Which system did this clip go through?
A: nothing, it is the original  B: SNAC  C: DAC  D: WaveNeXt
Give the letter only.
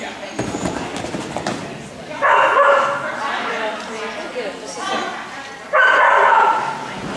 A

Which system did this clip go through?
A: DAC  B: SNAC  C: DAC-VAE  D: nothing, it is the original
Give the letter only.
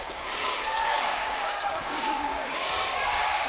A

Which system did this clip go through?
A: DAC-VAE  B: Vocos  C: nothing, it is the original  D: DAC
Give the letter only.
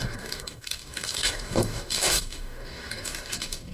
D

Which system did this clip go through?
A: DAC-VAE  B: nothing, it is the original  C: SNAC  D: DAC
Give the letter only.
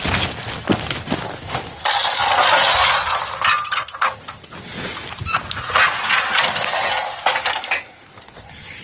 B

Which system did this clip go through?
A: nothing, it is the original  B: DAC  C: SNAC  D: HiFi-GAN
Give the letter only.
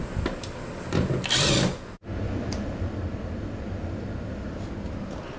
A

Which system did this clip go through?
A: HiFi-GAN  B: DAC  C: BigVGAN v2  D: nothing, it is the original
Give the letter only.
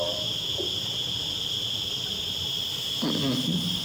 D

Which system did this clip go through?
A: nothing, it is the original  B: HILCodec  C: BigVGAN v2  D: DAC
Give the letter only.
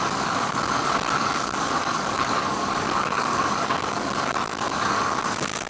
D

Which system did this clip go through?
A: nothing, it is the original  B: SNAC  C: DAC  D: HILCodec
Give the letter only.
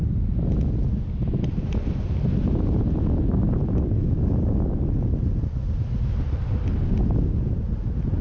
A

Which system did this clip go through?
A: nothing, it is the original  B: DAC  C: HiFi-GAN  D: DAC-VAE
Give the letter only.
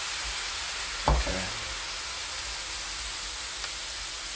A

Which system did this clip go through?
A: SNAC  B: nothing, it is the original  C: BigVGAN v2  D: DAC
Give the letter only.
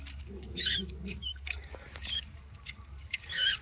D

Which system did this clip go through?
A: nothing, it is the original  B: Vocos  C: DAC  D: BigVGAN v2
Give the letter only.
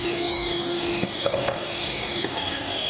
C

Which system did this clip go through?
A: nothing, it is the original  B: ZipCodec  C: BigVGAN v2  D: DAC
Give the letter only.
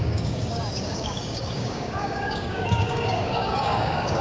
D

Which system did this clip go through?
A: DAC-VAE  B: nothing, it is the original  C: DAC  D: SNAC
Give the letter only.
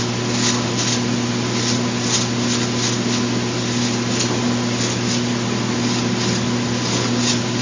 B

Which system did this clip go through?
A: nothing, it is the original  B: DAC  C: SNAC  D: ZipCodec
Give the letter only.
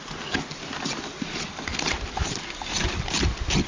A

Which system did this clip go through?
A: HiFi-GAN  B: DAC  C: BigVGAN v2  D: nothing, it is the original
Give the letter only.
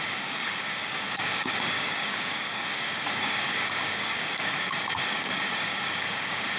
B